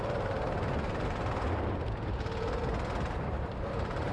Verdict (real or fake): real